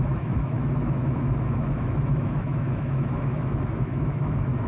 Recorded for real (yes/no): no